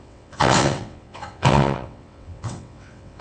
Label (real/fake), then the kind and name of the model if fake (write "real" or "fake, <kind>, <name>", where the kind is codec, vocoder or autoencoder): fake, vocoder, WaveNeXt